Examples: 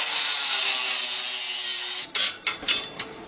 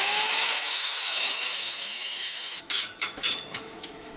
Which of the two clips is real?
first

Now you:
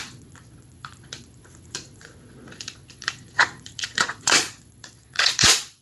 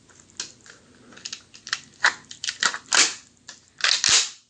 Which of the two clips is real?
second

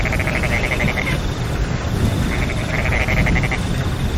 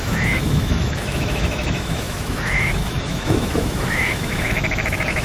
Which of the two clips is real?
first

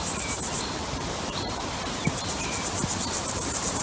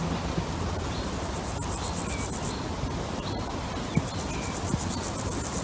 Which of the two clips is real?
second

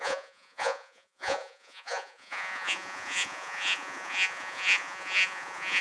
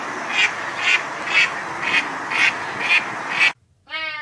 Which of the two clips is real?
second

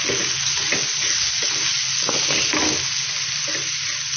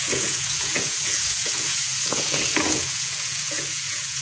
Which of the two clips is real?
first